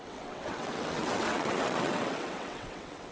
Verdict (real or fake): fake